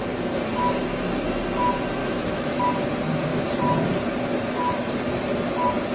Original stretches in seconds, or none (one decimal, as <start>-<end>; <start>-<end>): 0.0-2.0; 2.6-5.9